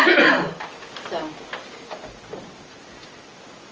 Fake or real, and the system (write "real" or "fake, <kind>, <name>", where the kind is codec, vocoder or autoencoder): real